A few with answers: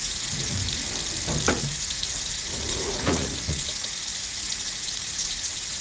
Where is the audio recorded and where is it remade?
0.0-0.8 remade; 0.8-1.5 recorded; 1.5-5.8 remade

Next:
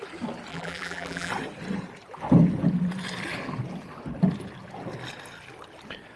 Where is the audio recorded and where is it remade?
0.0-0.5 recorded; 0.5-1.3 remade; 1.3-6.2 recorded